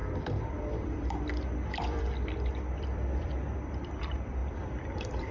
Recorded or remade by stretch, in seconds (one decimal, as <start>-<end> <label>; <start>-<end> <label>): 0.0-5.3 remade